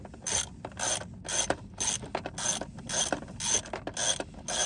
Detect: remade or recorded recorded